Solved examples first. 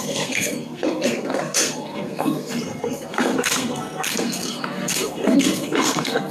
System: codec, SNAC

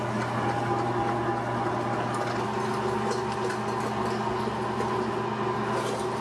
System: none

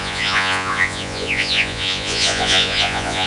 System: vocoder, Vocos